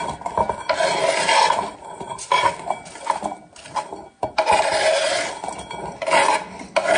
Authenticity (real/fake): real